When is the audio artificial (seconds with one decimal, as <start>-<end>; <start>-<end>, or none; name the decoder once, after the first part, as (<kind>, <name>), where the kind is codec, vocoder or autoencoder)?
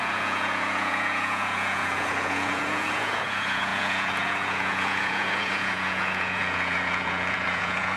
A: 0.0-8.0 (vocoder, Vocos)